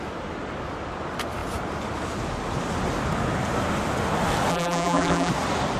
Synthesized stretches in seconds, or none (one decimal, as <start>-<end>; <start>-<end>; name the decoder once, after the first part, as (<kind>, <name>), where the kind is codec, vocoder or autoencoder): 4.5-5.3 (vocoder, BigVGAN v2)